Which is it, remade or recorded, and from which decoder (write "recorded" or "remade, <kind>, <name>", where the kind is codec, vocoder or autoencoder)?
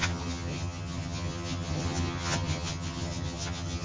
remade, vocoder, HiFi-GAN